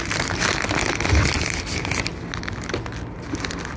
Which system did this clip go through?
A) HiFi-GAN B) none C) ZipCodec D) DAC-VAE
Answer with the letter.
B